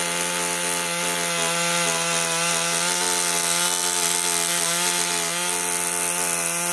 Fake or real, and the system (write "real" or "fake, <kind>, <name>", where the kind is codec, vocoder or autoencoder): real